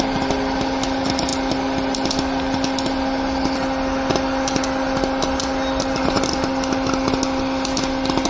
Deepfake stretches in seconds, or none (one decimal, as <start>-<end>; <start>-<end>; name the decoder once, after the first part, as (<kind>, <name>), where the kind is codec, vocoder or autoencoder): none